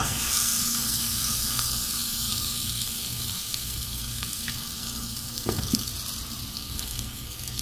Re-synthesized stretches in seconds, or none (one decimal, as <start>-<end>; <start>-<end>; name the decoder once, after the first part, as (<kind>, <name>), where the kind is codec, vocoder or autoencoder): 0.0-5.9 (codec, SNAC); 6.5-7.6